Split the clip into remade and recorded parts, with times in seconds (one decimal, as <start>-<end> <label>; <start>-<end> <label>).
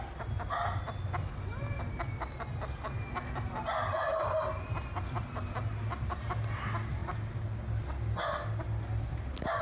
0.0-9.6 recorded